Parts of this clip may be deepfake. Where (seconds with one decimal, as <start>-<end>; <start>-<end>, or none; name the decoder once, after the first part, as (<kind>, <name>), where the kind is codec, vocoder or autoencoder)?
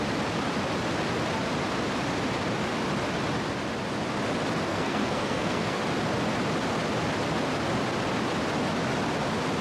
4.7-5.8 (codec, SNAC)